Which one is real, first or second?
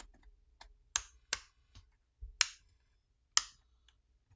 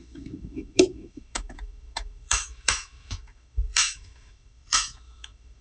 first